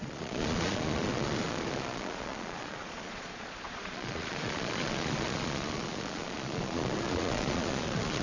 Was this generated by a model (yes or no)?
yes